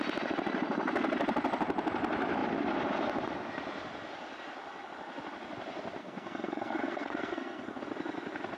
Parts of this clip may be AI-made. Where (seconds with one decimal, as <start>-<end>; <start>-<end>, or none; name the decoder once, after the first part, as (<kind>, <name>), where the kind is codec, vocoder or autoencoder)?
6.0-7.8 (codec, SNAC)